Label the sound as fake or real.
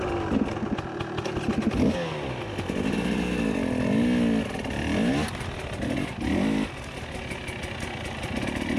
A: real